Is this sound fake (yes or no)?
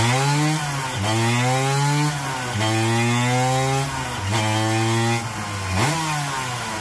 no